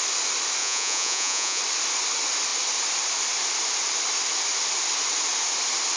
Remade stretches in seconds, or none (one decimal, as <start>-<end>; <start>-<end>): 0.6-1.6